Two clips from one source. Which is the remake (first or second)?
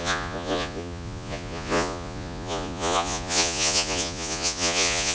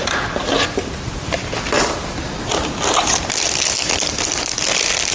first